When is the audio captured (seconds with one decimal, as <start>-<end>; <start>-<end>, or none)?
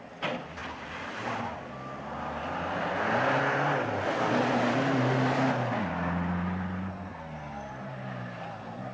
0.0-8.9